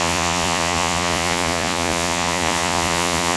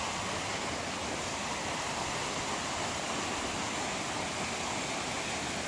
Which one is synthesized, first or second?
first